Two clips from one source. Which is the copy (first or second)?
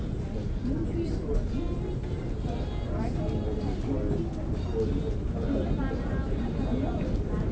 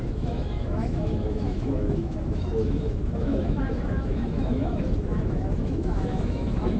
second